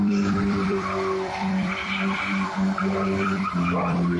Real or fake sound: fake